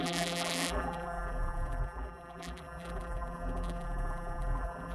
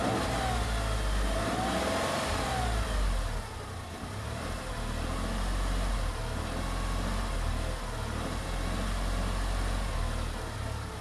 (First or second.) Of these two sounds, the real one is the second